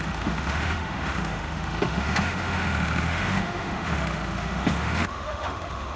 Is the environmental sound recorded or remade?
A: remade